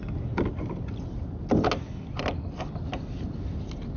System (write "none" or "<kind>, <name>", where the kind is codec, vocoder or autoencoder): none